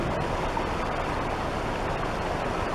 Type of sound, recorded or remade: recorded